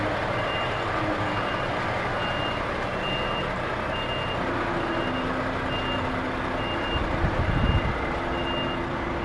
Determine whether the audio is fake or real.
real